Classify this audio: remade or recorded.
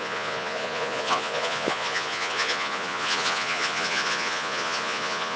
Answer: remade